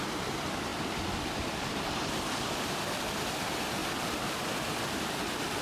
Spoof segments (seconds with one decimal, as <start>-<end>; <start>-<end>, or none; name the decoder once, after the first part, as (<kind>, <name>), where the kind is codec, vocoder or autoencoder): 0.0-3.8 (vocoder, BigVGAN v2); 4.5-5.6